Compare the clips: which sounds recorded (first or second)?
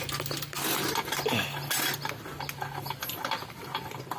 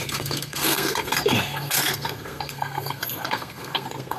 first